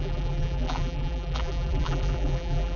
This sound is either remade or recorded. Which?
remade